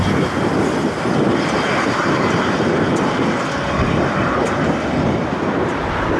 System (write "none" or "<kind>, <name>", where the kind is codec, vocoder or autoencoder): none